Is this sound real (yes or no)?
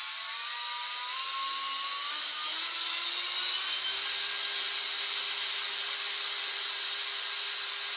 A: yes